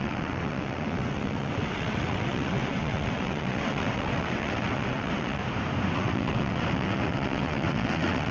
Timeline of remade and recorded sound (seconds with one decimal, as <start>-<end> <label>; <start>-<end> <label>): 0.0-5.4 remade; 5.4-5.9 recorded; 5.9-8.3 remade